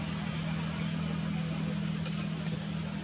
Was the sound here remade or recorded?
recorded